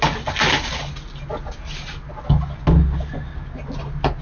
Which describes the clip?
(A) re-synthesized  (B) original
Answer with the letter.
B